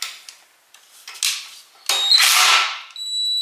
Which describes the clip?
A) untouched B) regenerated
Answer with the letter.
A